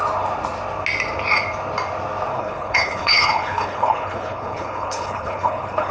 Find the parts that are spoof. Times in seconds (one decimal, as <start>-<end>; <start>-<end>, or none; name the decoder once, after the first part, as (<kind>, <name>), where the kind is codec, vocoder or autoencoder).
2.3-5.9 (codec, HILCodec)